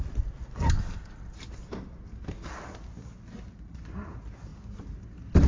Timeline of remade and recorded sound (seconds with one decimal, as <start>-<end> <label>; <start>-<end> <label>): 0.0-5.5 recorded